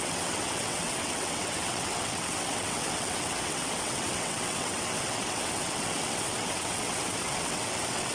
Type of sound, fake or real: fake